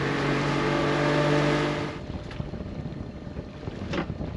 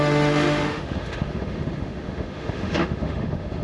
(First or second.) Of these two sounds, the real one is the first